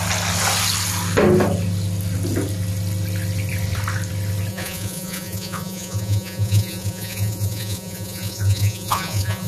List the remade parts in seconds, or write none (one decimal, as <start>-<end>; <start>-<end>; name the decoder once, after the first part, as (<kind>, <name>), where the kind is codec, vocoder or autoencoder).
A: 4.5-9.5 (vocoder, Vocos)